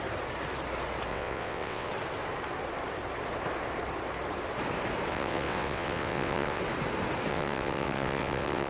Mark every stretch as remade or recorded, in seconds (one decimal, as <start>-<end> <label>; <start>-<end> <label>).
0.0-1.1 recorded; 1.1-1.9 remade; 1.9-5.1 recorded; 5.1-6.6 remade; 6.6-7.3 recorded; 7.3-8.7 remade